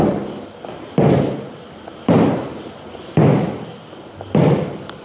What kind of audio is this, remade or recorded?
recorded